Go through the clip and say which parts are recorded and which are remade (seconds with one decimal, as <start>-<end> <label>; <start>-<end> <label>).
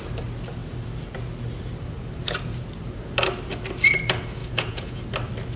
0.0-4.4 recorded; 4.4-5.0 remade; 5.0-5.6 recorded